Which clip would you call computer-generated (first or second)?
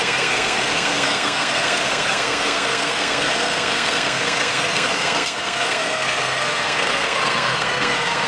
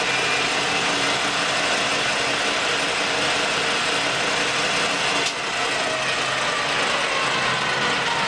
first